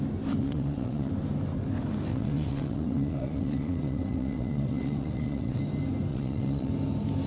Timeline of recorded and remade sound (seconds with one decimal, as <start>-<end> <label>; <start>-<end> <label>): 0.0-0.4 recorded; 0.4-1.1 remade; 1.1-2.1 recorded; 2.1-5.6 remade; 5.6-6.1 recorded; 6.1-6.7 remade; 6.7-7.3 recorded